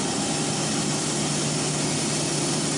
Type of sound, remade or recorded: recorded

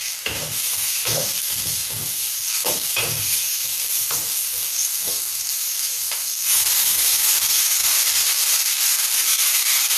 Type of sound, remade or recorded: remade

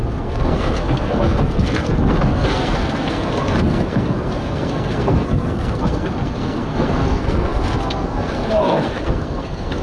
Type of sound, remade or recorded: remade